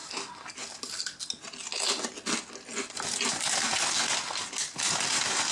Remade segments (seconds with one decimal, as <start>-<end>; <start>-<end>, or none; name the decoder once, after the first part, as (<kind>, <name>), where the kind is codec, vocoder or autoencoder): none